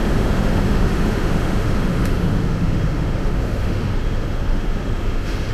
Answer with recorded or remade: remade